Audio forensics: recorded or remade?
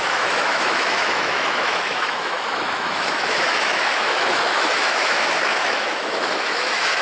remade